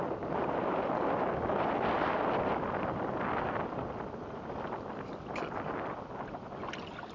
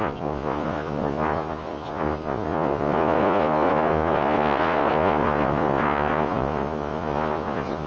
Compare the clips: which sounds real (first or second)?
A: first